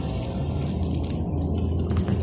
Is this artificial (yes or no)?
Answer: no